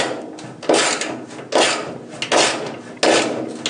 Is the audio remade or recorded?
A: recorded